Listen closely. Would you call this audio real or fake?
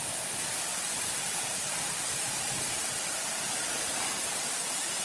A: real